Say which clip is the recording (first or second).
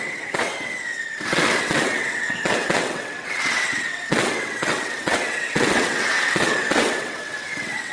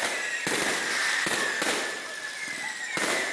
second